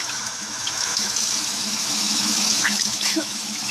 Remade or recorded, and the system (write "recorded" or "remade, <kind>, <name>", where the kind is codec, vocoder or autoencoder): remade, autoencoder, DAC-VAE